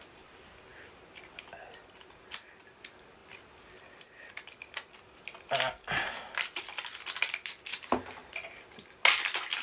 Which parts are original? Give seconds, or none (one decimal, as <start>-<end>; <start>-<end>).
0.0-9.6